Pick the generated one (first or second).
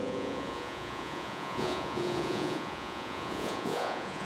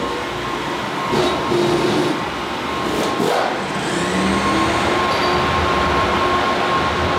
first